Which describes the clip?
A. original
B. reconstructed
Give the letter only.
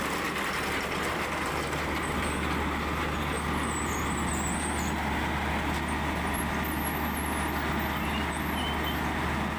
A